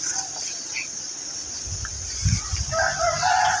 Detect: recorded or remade recorded